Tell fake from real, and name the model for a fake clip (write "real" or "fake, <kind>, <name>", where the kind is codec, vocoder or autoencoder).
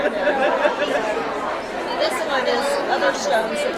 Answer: real